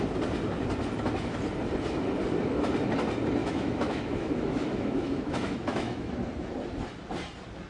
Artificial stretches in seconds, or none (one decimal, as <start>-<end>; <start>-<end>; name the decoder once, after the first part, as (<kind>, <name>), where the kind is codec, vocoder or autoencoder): 3.4-6.1 (autoencoder, DAC-VAE)